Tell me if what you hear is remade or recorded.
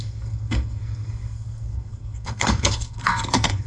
remade